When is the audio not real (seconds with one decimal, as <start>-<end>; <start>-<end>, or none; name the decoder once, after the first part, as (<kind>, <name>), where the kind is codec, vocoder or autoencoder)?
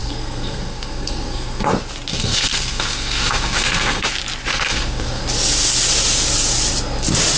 0.0-1.7 (codec, SNAC); 2.1-4.1; 4.5-5.2